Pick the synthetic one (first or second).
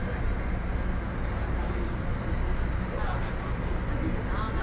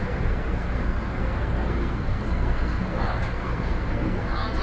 second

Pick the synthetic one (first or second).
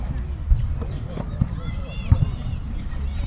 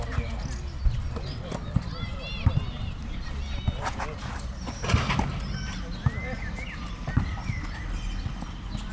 first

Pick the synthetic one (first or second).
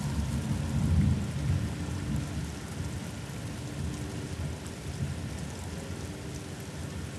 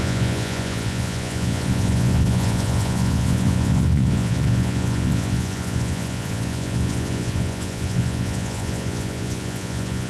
second